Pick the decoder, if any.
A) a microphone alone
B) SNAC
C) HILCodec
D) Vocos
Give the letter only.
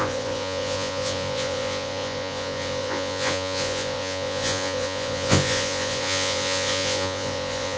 D